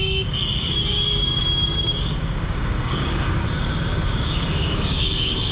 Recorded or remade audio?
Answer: remade